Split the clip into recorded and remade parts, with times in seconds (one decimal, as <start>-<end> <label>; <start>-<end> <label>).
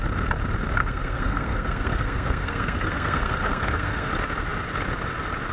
0.0-0.8 recorded; 0.8-4.1 remade; 4.1-5.5 recorded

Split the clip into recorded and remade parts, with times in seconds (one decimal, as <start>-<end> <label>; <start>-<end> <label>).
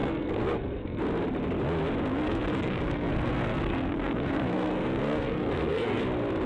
0.0-1.0 remade; 1.0-2.1 recorded; 2.1-6.0 remade; 6.0-6.5 recorded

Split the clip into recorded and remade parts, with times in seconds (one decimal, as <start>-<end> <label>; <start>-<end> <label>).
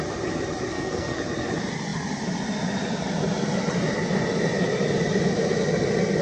0.0-0.7 recorded; 0.7-1.2 remade; 1.2-6.2 recorded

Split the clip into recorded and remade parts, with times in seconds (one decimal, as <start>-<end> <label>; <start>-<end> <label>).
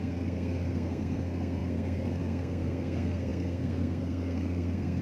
0.0-5.0 remade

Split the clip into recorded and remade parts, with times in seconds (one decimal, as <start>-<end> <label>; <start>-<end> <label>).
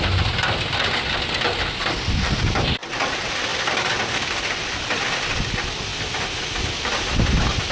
0.0-7.7 recorded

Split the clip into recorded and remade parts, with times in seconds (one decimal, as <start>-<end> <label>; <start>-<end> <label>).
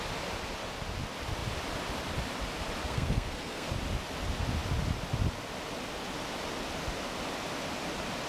0.0-2.8 recorded; 2.8-3.7 remade; 3.7-8.3 recorded